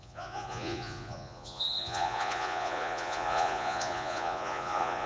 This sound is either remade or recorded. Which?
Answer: remade